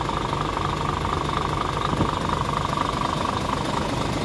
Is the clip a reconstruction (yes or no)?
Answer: no